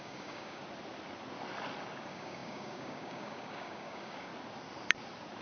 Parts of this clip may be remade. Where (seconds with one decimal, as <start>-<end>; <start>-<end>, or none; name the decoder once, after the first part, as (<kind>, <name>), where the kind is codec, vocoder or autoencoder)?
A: 0.0-0.6 (codec, DAC); 2.0-4.3